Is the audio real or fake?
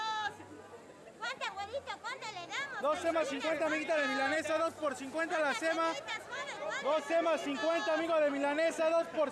real